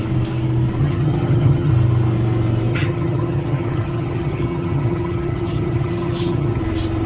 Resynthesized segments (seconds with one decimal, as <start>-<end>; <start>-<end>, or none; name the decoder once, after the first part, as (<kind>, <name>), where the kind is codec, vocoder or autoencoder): 0.8-1.7 (vocoder, HiFi-GAN); 2.7-6.6